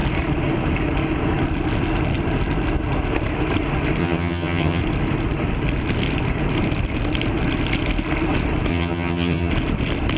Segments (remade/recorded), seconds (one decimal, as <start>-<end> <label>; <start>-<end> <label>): 0.0-4.0 recorded; 4.0-4.8 remade; 4.8-8.7 recorded; 8.7-9.5 remade; 9.5-10.2 recorded